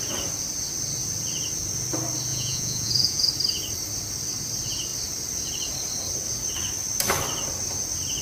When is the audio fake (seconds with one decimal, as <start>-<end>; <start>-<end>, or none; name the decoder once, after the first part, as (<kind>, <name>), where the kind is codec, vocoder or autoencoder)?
2.3-3.3 (vocoder, Vocos)